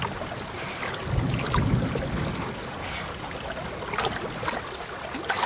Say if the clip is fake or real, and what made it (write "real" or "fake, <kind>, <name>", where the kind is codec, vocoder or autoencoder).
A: real